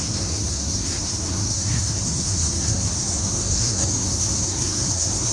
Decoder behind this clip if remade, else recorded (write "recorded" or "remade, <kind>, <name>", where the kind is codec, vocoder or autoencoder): remade, codec, SNAC